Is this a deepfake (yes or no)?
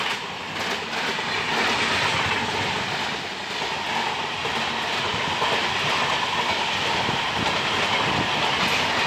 no